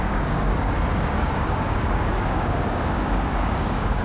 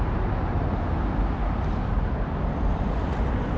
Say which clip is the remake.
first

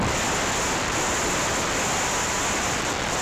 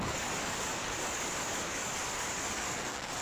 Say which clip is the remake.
second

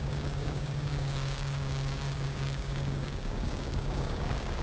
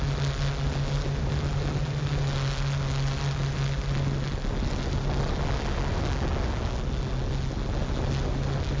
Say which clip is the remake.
first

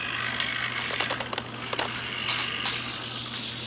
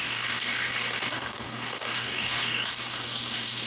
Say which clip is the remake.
second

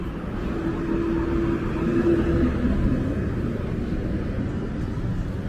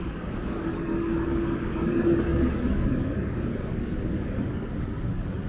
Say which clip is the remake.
second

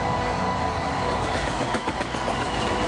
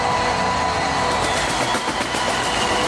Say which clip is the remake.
first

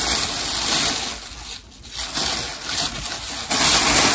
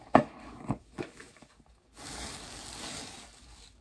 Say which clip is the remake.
second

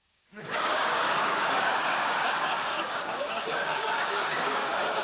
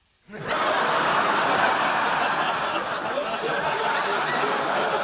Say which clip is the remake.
first